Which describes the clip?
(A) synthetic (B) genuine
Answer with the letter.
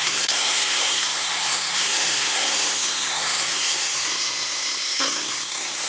A